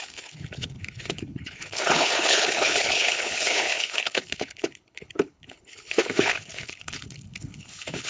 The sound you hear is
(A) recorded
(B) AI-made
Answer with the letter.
B